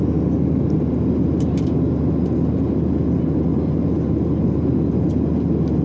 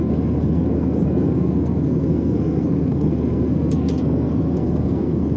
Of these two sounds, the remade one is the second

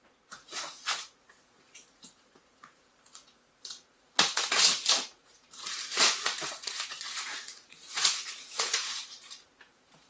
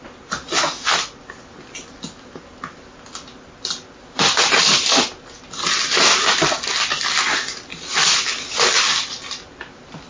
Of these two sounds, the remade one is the first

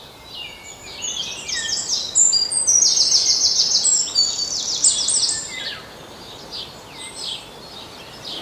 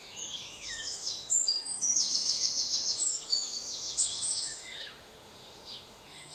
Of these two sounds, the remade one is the second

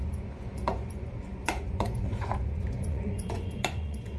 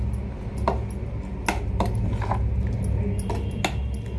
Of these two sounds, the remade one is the first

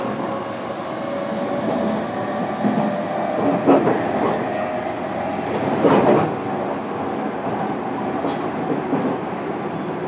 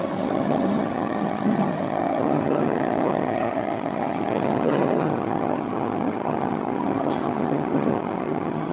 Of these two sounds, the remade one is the second